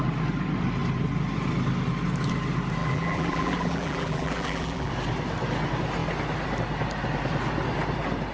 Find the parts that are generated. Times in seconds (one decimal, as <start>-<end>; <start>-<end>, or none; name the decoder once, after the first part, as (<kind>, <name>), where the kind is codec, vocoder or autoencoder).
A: 2.8-4.9 (vocoder, BigVGAN v2)